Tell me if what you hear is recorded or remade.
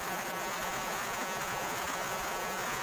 remade